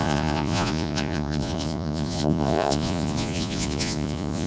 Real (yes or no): no